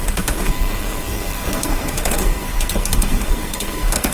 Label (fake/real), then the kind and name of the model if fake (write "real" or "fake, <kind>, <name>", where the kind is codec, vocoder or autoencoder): fake, codec, SNAC